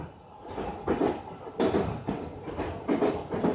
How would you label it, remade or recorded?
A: recorded